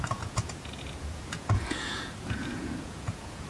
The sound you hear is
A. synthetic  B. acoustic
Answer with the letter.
A